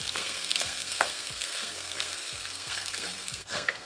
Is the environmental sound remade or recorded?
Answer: remade